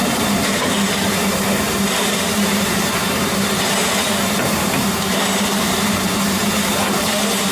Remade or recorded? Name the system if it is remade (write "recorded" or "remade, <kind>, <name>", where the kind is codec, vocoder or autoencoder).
remade, vocoder, BigVGAN v2